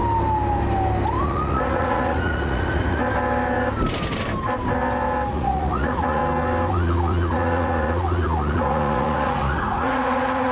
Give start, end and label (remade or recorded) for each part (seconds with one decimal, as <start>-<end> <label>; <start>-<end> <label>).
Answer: 0.0-1.2 recorded; 1.2-3.0 remade; 3.0-5.3 recorded; 5.3-6.2 remade; 6.2-6.7 recorded; 6.7-10.5 remade